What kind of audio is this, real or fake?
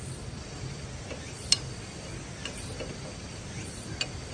real